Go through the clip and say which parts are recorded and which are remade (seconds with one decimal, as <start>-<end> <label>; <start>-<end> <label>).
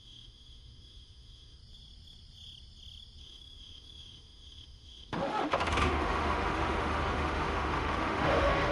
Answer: 0.0-1.6 remade; 1.6-3.2 recorded; 3.2-8.7 remade